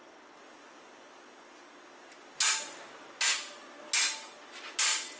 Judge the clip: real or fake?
real